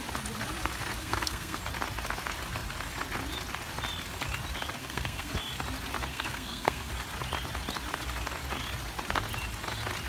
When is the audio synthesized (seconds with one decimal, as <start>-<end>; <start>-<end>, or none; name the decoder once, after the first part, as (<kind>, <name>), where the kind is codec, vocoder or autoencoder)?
1.0-1.6 (codec, SNAC); 4.8-5.3; 6.1-6.9